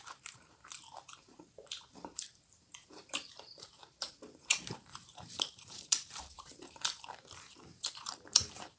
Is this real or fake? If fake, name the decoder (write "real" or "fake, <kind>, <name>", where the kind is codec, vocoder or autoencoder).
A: fake, vocoder, BigVGAN v2